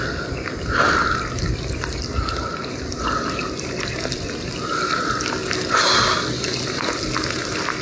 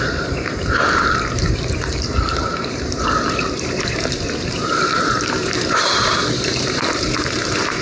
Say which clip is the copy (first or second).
second